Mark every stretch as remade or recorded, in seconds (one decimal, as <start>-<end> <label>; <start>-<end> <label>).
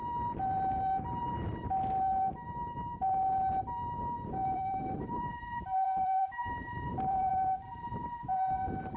0.0-4.4 recorded; 4.4-7.3 remade; 7.3-9.0 recorded